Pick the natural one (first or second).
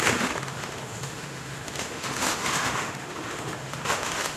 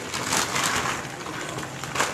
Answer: second